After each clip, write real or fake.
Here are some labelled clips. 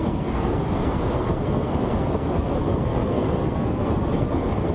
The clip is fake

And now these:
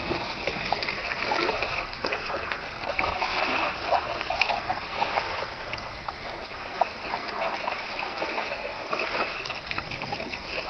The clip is fake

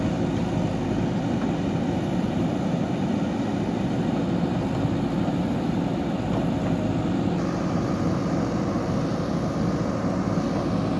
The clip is real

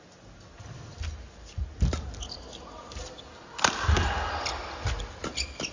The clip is real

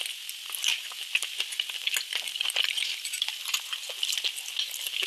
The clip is real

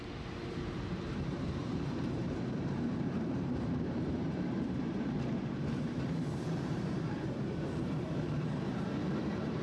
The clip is fake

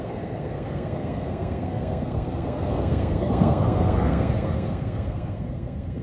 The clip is fake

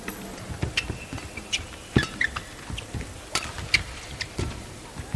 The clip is real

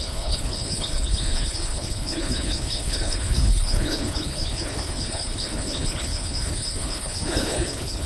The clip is fake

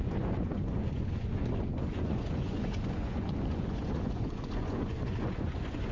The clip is fake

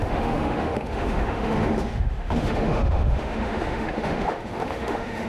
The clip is fake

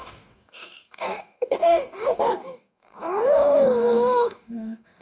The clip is fake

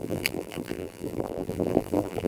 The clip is fake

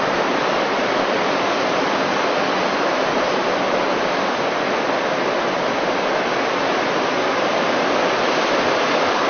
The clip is fake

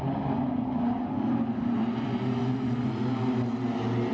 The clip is real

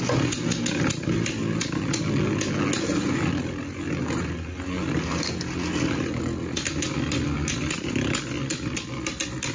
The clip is real